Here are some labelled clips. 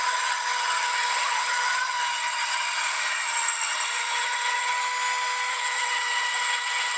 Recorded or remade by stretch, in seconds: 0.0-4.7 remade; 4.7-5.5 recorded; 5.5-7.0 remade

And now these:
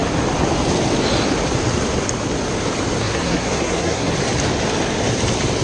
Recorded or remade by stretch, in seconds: 0.0-3.0 recorded; 3.0-4.1 remade; 4.1-5.6 recorded

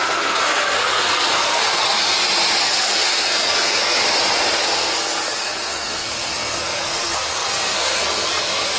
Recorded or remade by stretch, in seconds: 0.0-2.0 remade; 2.0-2.6 recorded; 2.6-4.0 remade; 4.0-4.6 recorded; 4.6-8.8 remade

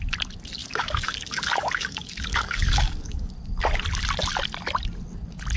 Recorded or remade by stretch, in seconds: 0.0-0.6 recorded; 0.6-3.3 remade; 3.3-5.6 recorded

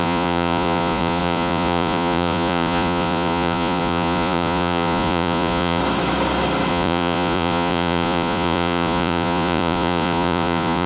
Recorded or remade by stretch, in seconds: 0.0-5.8 remade; 5.8-6.7 recorded; 6.7-10.9 remade

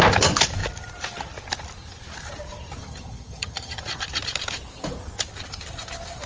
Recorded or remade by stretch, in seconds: 0.0-2.8 recorded; 2.8-3.8 remade; 3.8-6.3 recorded